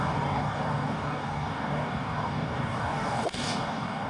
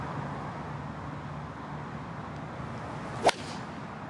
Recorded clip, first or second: second